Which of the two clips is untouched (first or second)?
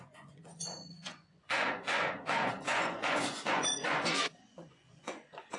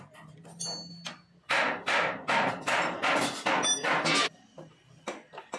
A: second